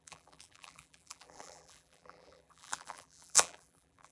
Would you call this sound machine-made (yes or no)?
yes